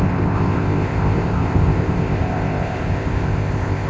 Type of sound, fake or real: fake